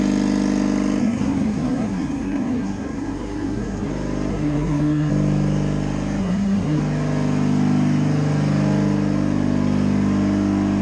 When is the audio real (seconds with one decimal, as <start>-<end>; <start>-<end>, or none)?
0.0-1.0; 3.9-4.3; 5.1-6.2; 6.8-10.8